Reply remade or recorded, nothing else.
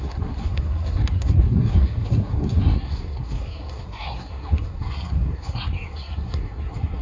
remade